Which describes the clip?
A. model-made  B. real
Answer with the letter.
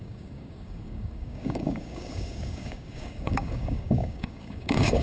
A